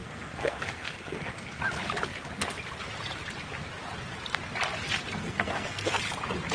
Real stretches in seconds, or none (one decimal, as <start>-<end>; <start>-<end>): 1.6-5.2; 6.0-6.5